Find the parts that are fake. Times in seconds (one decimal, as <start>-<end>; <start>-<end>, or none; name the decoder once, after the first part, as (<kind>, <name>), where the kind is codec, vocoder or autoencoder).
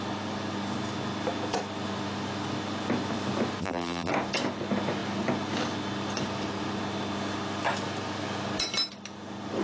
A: 3.6-4.1 (vocoder, BigVGAN v2)